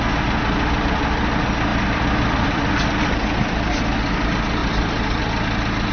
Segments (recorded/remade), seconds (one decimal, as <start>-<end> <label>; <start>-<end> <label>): 0.0-1.7 recorded; 1.7-2.7 remade; 2.7-4.6 recorded; 4.6-5.2 remade; 5.2-5.9 recorded